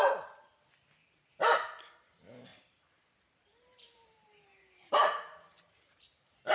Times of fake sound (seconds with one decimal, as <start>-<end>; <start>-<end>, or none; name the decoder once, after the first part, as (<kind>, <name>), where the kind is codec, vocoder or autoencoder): 2.5-6.0 (vocoder, BigVGAN v2)